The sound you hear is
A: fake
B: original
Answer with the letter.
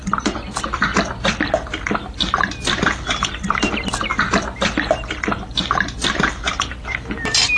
B